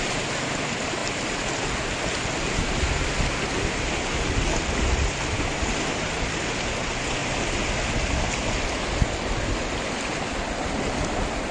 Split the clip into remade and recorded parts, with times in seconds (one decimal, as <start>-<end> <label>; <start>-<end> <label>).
0.0-11.5 recorded